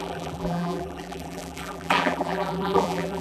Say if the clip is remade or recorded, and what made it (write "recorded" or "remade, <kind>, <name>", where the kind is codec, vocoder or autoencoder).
remade, vocoder, BigVGAN v2